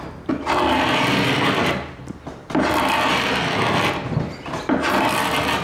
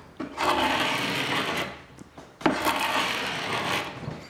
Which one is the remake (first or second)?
second